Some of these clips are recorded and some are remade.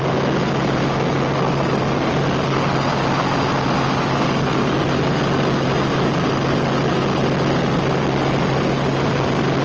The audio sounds recorded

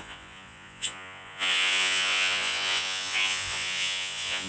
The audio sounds remade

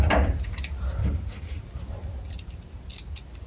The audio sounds recorded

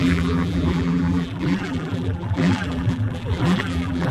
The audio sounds remade